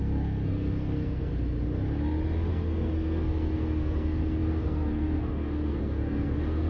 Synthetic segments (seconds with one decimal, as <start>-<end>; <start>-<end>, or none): 0.0-1.3; 2.5-6.7